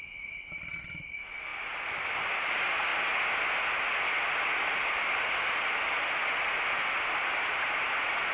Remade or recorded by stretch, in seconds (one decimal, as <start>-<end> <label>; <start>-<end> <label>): 0.0-8.3 recorded